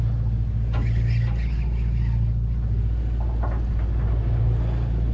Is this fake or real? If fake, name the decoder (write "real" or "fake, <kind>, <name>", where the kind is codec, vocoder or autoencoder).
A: real